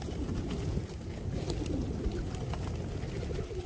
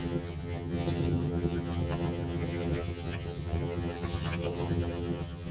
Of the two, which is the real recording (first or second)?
first